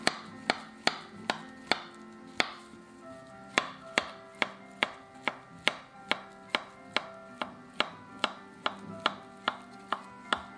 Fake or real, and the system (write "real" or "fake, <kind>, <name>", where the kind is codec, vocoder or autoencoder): real